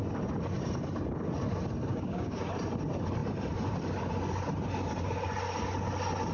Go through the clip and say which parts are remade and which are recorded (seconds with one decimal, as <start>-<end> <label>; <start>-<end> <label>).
0.0-1.9 recorded; 1.9-2.5 remade; 2.5-6.3 recorded